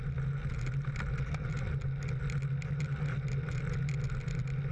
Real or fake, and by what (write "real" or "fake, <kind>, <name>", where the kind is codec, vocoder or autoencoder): real